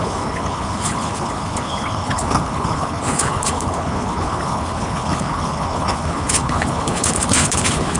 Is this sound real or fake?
fake